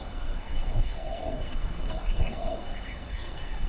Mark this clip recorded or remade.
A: remade